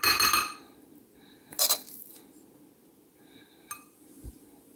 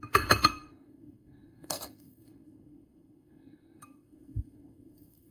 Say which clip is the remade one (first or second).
second